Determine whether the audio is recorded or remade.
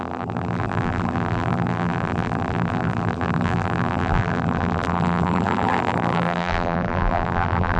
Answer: remade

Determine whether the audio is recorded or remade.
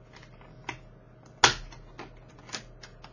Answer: recorded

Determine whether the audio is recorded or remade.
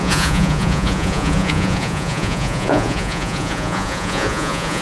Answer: remade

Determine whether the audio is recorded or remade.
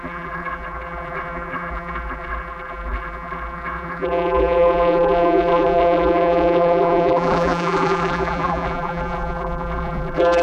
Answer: remade